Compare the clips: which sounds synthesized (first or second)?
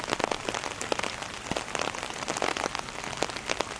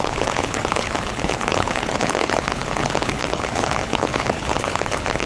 second